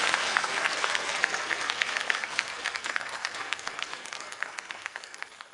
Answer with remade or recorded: remade